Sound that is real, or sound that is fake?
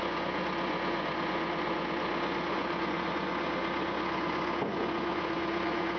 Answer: fake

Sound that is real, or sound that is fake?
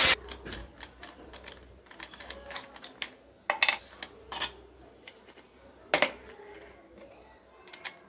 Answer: real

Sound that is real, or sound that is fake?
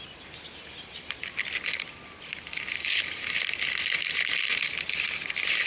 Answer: real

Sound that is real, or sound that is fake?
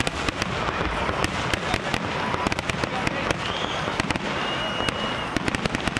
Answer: real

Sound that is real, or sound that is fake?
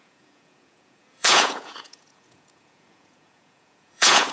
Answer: fake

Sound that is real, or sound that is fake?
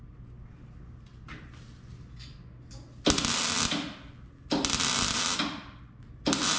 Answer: real